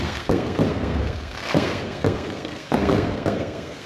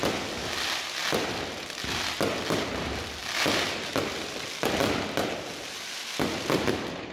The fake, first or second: first